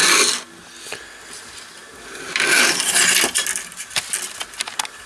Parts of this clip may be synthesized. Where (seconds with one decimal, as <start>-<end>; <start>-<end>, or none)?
none